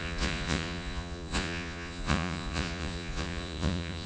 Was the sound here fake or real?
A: fake